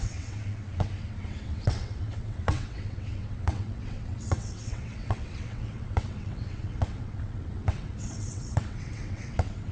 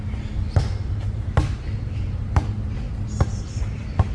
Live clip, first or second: second